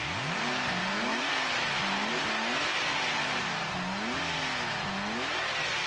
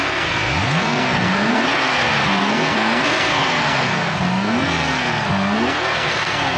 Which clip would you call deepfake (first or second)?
second